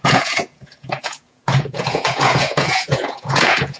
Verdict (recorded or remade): remade